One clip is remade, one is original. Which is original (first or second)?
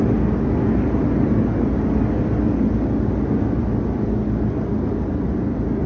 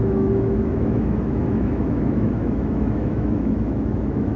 first